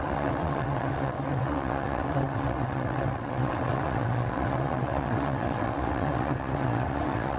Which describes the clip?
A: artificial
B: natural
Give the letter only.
A